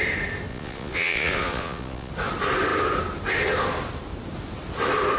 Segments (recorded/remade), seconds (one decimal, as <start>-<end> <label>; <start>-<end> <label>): 0.0-0.5 recorded; 0.5-2.1 remade; 2.1-5.2 recorded